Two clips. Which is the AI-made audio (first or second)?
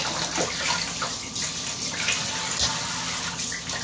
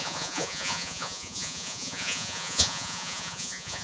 second